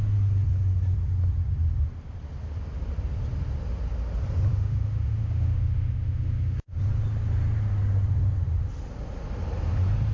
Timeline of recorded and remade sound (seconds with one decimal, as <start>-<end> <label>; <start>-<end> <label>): 0.0-4.5 recorded; 4.5-6.8 remade; 6.8-10.1 recorded